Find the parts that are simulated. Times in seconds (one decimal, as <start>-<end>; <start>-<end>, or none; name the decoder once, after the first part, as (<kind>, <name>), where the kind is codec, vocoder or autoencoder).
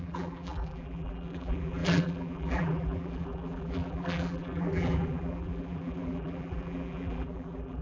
0.0-7.8 (vocoder, BigVGAN v2)